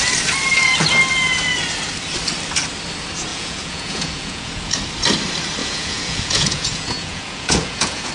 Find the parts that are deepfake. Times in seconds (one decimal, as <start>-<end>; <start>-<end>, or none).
3.3-4.7; 5.6-8.1